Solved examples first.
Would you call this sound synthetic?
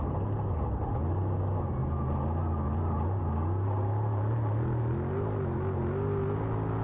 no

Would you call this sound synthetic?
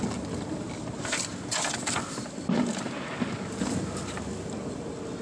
no